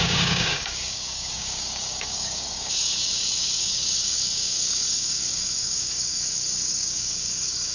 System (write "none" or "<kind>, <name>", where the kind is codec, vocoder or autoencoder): codec, DAC